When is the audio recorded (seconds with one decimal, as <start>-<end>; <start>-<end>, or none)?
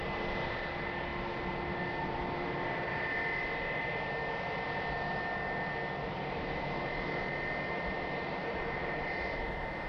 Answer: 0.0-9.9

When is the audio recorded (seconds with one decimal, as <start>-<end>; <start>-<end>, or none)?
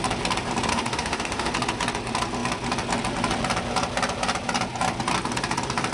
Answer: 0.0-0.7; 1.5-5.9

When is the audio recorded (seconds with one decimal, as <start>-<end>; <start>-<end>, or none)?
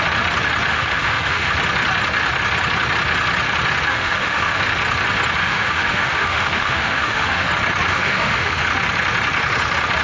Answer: 0.0-0.7; 1.5-3.9; 4.6-5.4; 7.5-7.9; 8.6-10.0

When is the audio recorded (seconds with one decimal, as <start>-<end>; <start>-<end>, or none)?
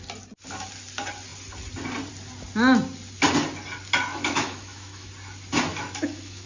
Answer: 0.0-4.1; 5.1-5.7